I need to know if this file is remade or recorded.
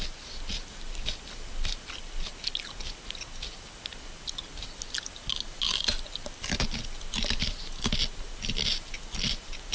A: recorded